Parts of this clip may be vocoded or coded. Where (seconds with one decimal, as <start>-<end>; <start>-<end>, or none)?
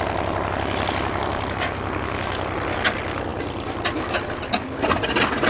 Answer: none